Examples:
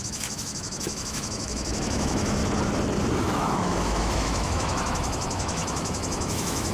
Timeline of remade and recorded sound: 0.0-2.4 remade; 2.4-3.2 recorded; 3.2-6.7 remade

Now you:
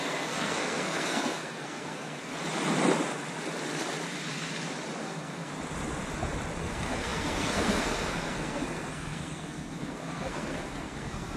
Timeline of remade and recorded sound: 0.0-2.3 remade; 2.3-5.0 recorded; 5.0-5.5 remade; 5.5-6.6 recorded; 6.6-11.4 remade

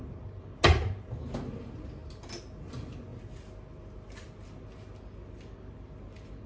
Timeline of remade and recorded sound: 0.0-6.5 recorded